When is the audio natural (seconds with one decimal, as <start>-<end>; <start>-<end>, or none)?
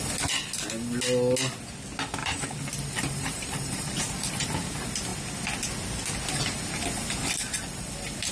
0.0-2.2; 4.0-8.3